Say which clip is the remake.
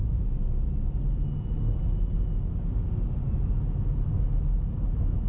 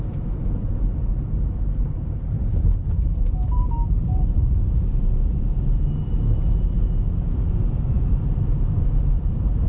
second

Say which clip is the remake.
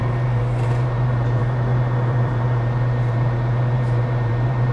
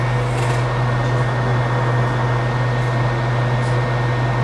first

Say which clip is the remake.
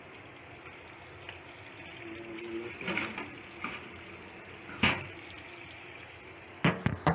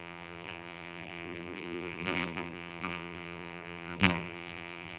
second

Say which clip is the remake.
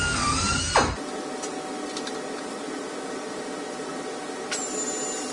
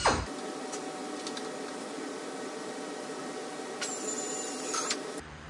second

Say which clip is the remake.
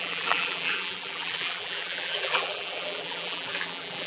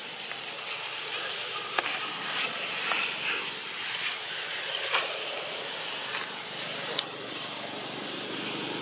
first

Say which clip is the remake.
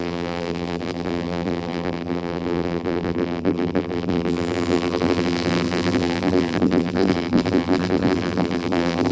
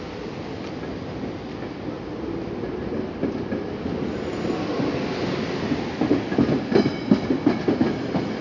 first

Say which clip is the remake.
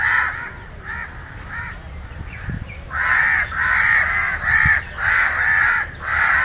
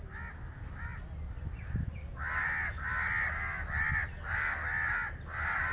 first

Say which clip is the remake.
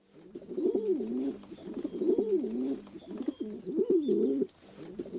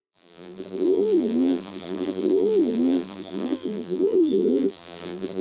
second